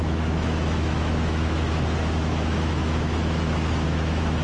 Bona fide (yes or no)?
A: no